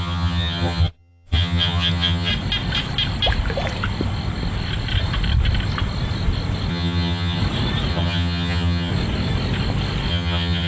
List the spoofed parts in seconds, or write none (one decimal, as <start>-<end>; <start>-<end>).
0.0-2.3; 6.7-7.4; 7.9-8.9; 10.1-10.7